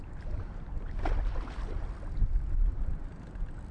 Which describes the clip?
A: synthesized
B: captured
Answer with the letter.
B